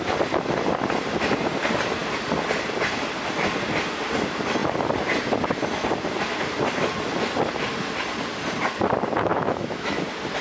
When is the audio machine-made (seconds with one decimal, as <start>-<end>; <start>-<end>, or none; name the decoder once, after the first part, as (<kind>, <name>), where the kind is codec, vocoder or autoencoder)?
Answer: 9.3-10.0 (autoencoder, DAC-VAE)